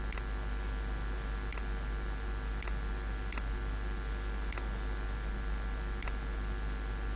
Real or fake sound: real